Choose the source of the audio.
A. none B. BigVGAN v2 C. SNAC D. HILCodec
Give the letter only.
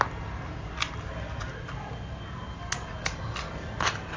A